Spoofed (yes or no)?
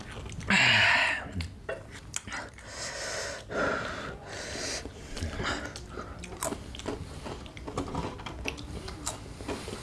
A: no